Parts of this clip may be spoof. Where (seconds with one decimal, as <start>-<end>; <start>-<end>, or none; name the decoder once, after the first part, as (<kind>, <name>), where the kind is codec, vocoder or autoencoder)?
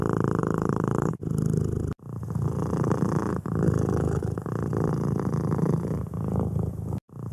0.4-1.2 (codec, DAC); 3.3-4.5